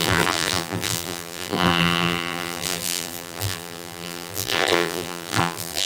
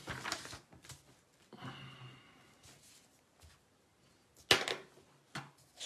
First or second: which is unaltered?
second